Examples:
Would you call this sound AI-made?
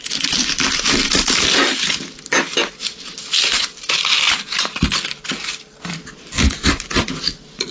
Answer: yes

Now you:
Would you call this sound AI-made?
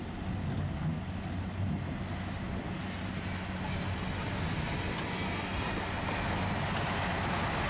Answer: no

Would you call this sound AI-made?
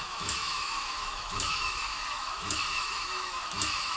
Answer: yes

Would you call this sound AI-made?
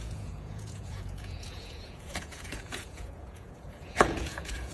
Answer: yes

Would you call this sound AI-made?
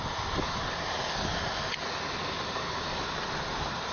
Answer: no